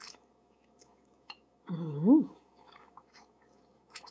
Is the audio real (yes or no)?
no